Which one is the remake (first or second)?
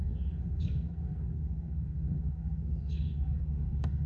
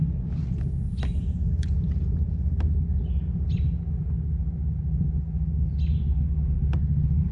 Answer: first